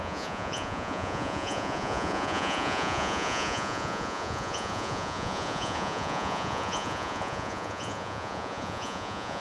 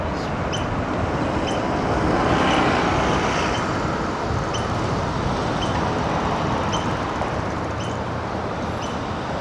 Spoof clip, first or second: first